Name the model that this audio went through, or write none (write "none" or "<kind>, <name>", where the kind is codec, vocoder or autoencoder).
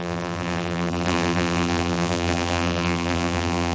vocoder, BigVGAN v2